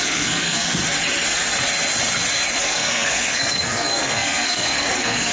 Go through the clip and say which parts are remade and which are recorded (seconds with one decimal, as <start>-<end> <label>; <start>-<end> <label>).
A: 0.0-0.8 remade; 0.8-2.6 recorded; 2.6-5.3 remade